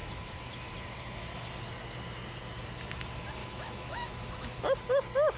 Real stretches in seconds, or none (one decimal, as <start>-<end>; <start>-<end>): 0.7-3.4; 4.6-5.4